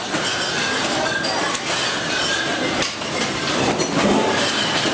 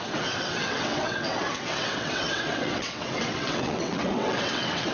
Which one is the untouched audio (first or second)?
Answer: first